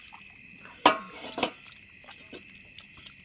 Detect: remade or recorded recorded